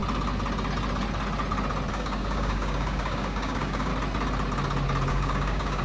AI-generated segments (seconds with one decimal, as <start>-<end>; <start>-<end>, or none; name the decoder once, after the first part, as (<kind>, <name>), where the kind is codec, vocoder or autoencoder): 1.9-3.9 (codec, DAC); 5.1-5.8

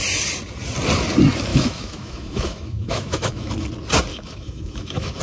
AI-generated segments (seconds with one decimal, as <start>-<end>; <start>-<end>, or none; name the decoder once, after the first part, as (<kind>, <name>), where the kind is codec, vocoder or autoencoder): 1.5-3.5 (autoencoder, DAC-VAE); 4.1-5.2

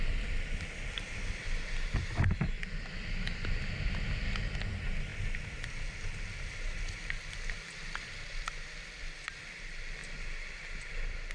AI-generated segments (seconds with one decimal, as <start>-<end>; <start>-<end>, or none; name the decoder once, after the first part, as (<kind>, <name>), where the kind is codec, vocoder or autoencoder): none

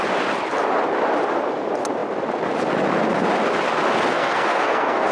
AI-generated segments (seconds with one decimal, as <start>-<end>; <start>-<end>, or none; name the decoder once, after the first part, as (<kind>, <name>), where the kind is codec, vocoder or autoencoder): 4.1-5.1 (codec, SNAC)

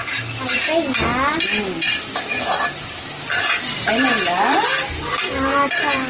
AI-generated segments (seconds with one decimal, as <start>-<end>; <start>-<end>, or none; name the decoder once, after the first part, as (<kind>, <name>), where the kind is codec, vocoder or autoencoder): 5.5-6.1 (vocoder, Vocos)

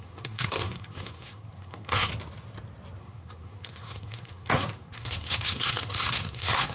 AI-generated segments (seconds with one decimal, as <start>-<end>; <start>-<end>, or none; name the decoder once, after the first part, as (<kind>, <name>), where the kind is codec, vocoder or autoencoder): 0.0-2.1 (codec, SNAC); 3.0-6.7

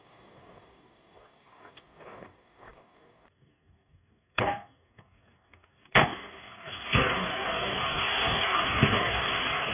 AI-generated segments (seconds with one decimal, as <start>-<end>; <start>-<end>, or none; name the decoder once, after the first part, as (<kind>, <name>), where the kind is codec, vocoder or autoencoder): 0.0-9.7 (codec, DAC)